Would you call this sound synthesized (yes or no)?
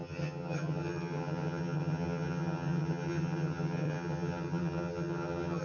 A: yes